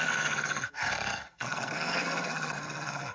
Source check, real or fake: fake